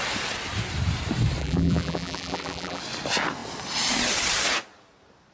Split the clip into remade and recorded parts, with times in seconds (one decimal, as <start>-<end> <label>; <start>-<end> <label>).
0.0-1.4 recorded; 1.4-2.8 remade; 2.8-5.3 recorded